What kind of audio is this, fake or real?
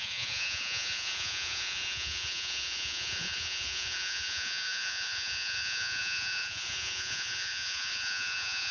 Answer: fake